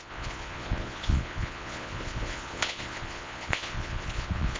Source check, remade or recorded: remade